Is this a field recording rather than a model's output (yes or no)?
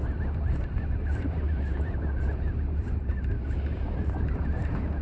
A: no